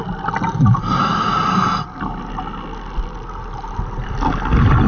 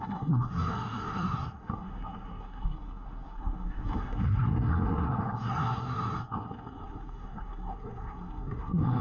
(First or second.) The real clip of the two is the first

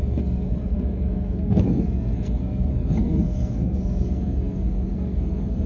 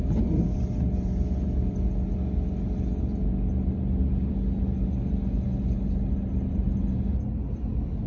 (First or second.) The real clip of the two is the second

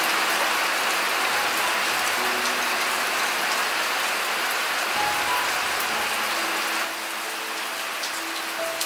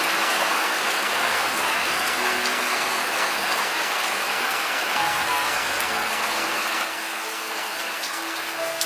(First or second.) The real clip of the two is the first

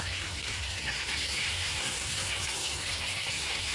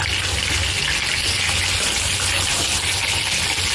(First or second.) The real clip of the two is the second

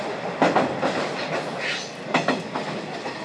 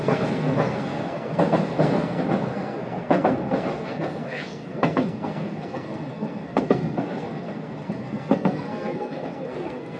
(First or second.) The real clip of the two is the first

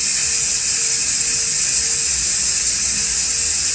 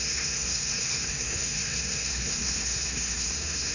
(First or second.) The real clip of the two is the first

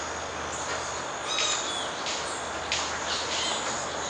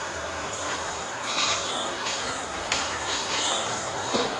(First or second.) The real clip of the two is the first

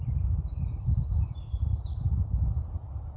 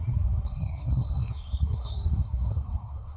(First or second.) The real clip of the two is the first